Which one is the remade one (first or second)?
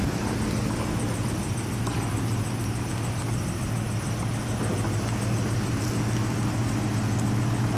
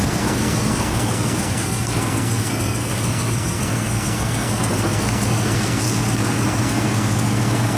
second